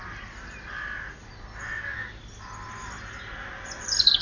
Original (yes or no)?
yes